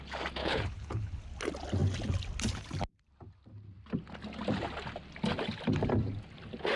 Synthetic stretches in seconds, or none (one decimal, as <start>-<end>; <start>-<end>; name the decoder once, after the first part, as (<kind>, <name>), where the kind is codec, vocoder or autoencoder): 0.4-1.2 (codec, HILCodec)